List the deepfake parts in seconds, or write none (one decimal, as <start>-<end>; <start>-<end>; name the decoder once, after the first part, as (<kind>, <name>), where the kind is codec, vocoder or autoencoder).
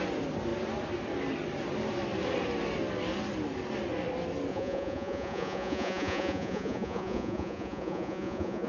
4.5-8.7 (vocoder, Vocos)